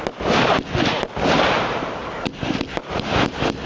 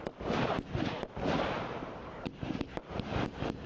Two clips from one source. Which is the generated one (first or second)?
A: second